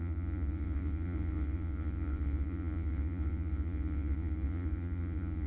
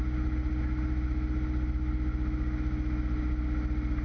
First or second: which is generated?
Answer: first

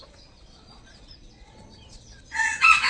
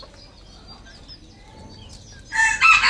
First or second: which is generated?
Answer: first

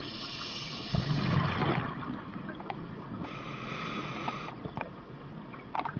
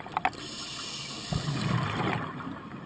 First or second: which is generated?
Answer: first